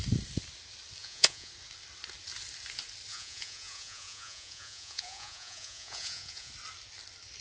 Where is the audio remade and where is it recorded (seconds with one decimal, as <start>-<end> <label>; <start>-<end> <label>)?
0.0-1.0 recorded; 1.0-1.5 remade; 1.5-3.1 recorded; 3.1-6.5 remade; 6.5-7.4 recorded